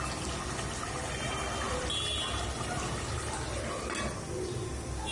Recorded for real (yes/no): yes